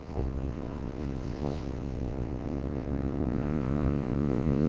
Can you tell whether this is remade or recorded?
remade